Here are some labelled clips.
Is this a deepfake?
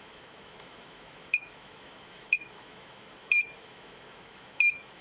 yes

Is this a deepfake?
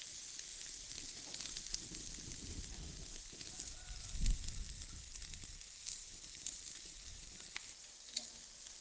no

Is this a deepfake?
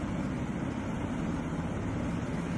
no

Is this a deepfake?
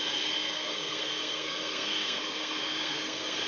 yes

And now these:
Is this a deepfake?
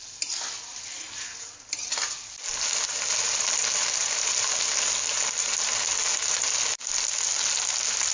no